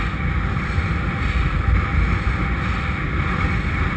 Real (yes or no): yes